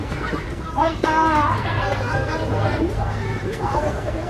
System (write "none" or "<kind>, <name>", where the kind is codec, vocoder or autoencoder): codec, SNAC